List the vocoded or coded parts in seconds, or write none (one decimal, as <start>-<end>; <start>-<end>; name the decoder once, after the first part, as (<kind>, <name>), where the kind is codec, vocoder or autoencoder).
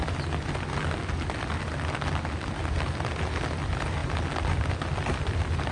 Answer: none